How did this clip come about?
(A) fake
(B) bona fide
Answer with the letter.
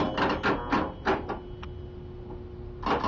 B